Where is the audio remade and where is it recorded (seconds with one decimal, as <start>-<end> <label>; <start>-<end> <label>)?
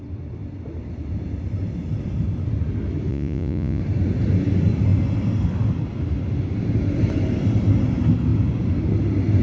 0.0-3.1 recorded; 3.1-3.8 remade; 3.8-9.4 recorded